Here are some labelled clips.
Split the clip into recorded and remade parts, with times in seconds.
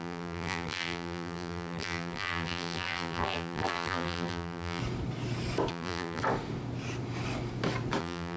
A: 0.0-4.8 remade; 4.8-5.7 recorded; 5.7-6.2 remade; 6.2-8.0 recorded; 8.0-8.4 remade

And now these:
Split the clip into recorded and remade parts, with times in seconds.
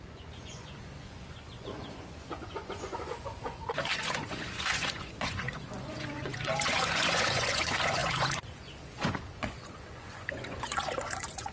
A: 0.0-11.5 remade